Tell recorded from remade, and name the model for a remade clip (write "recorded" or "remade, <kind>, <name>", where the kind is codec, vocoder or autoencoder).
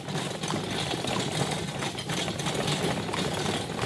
recorded